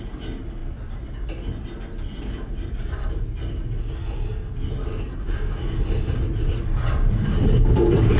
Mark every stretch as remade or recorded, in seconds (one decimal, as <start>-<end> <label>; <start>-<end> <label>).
0.0-8.2 recorded